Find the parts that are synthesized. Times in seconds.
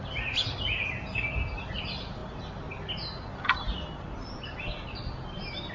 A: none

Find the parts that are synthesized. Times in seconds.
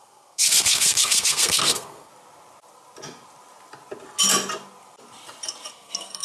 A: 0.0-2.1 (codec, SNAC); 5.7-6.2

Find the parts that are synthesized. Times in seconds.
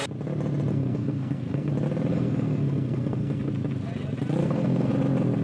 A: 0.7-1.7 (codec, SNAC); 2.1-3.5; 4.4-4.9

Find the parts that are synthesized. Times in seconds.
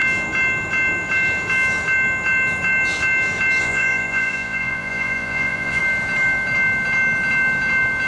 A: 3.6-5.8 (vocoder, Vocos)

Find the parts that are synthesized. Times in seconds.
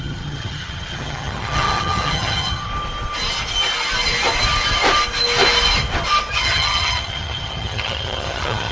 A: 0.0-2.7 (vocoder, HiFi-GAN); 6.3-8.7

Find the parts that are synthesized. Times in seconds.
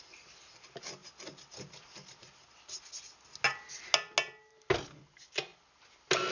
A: none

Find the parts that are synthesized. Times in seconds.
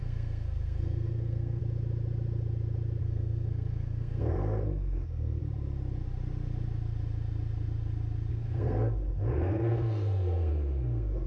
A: 0.0-1.6 (codec, SNAC); 3.0-5.4; 8.3-11.3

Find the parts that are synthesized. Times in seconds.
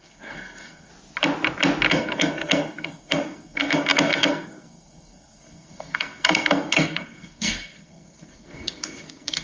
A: 0.0-0.9 (codec, SNAC); 1.9-9.4